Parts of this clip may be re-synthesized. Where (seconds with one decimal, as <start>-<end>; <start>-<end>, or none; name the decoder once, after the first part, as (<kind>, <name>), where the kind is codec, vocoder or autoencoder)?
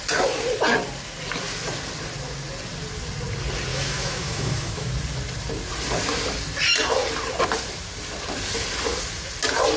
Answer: 3.7-4.9 (autoencoder, DAC-VAE)